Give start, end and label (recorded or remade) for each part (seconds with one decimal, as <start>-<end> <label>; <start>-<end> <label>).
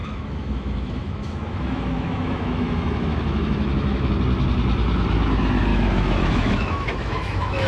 0.0-4.1 remade; 4.1-5.7 recorded; 5.7-7.7 remade